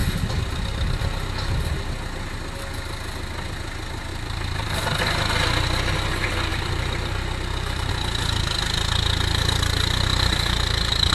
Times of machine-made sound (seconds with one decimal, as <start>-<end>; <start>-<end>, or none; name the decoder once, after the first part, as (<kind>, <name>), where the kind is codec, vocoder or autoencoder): 4.1-4.8 (vocoder, BigVGAN v2); 6.5-7.9; 10.1-11.1